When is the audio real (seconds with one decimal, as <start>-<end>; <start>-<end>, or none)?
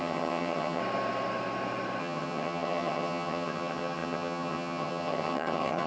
0.8-2.0